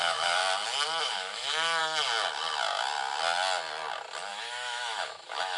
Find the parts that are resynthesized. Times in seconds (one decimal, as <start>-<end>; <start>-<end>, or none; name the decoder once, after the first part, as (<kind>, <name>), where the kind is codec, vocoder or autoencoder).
0.0-0.4 (autoencoder, DAC-VAE); 1.0-1.8; 4.3-5.6

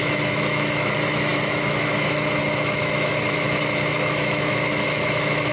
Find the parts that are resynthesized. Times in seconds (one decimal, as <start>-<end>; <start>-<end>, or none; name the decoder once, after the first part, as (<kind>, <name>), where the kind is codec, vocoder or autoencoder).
0.0-5.5 (autoencoder, DAC-VAE)